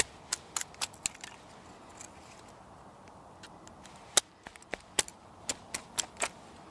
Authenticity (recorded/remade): recorded